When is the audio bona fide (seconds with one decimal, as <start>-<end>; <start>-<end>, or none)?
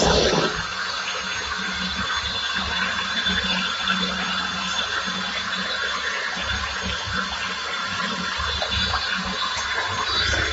0.0-7.8; 8.8-10.5